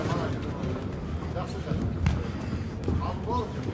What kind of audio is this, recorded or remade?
recorded